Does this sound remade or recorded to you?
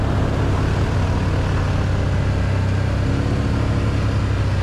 recorded